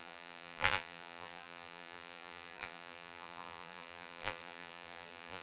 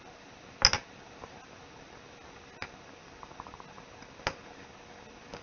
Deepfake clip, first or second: first